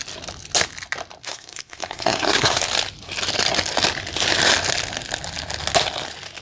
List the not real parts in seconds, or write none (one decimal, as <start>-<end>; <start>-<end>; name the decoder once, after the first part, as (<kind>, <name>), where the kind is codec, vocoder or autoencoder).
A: 1.2-2.6 (codec, SNAC)